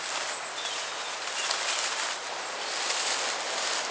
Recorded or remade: recorded